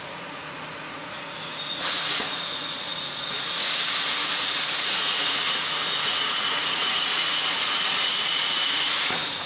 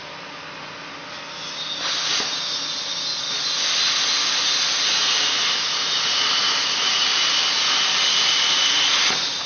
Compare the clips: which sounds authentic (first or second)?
second